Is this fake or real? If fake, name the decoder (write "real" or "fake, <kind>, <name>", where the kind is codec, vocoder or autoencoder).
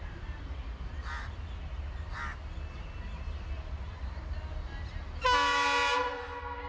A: real